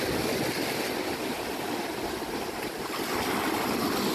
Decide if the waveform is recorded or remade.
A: recorded